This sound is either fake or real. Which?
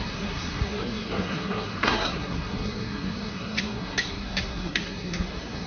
fake